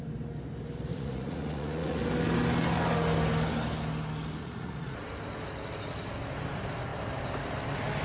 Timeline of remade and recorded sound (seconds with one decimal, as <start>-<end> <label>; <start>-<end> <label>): 0.0-0.9 recorded; 0.9-2.0 remade; 2.0-4.4 recorded; 4.4-5.0 remade; 5.0-8.0 recorded